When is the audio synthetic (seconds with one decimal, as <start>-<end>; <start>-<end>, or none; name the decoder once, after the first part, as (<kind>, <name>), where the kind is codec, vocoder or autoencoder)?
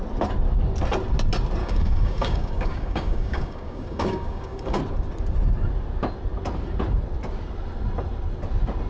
1.6-4.8 (codec, DAC)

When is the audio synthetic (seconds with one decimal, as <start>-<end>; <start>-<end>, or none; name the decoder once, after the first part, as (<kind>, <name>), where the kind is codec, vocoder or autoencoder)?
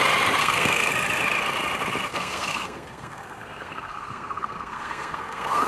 0.4-0.9 (codec, SNAC); 2.1-5.7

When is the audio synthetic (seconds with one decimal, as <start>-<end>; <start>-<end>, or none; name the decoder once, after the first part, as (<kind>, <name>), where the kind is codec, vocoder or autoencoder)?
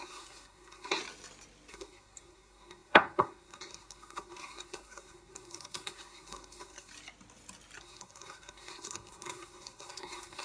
0.0-1.0 (codec, SNAC); 1.7-6.9; 7.8-10.4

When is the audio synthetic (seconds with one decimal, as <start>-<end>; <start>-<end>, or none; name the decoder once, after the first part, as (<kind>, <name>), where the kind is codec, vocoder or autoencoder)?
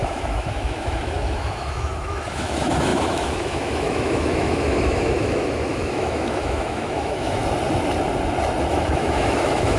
0.0-7.4 (autoencoder, DAC-VAE); 8.7-9.8